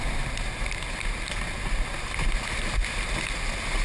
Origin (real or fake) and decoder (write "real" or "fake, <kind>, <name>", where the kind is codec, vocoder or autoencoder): real